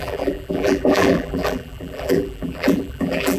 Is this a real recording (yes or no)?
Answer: no